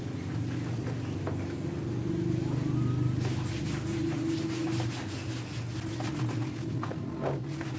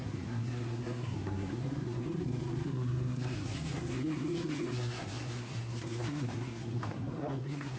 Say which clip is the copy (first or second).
second